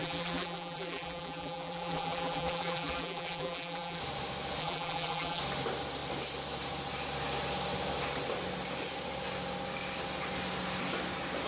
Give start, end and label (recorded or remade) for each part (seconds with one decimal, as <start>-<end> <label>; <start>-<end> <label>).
0.0-4.0 remade; 4.0-4.6 recorded; 4.6-5.4 remade; 5.4-11.5 recorded